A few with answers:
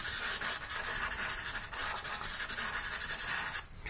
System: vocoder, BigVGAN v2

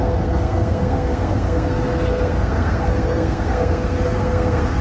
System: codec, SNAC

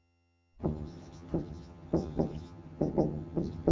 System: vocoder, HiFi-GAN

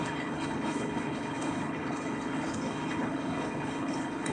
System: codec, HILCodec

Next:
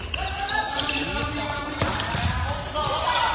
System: none